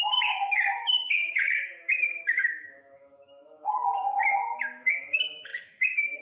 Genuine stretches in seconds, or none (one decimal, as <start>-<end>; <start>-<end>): none